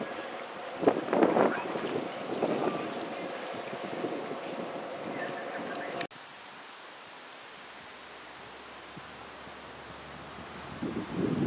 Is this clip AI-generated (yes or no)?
no